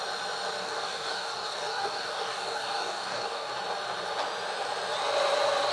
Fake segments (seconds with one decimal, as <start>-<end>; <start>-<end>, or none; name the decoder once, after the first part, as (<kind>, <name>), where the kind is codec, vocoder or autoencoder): 0.6-3.5 (codec, DAC)